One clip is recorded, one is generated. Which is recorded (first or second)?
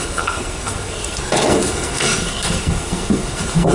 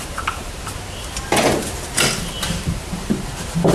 second